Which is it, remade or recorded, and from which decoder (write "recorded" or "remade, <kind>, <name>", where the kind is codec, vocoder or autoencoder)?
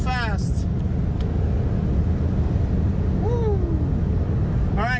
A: recorded